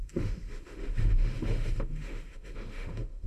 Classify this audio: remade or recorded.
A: remade